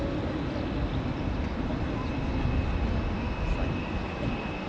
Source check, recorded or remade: recorded